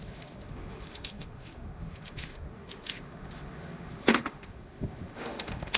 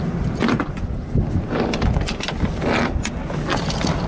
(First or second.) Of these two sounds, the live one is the second